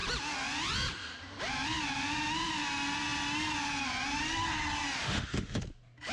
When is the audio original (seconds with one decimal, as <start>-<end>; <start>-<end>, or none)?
0.0-5.0; 5.6-6.1